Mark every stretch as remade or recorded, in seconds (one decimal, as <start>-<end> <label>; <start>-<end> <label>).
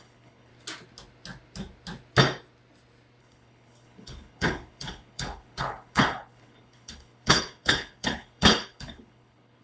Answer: 0.0-0.5 remade; 0.5-3.2 recorded; 3.2-9.6 remade